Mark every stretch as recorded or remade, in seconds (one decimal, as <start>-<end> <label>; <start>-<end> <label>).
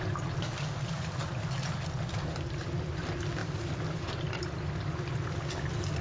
0.0-3.4 recorded; 3.4-4.1 remade; 4.1-6.0 recorded